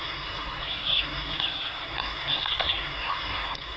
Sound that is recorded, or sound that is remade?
remade